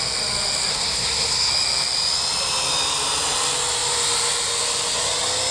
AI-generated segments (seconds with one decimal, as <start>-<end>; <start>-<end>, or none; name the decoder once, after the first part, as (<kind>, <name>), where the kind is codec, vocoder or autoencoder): 0.7-1.5 (codec, SNAC)